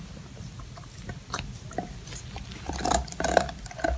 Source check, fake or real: real